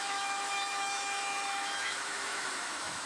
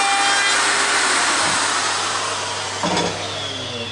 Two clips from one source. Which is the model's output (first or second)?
first